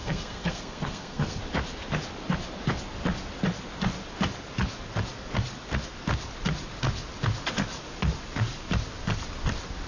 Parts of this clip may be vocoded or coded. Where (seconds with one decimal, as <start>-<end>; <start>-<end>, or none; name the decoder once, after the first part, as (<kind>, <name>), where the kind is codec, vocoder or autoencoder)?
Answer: 0.0-1.4 (codec, SNAC)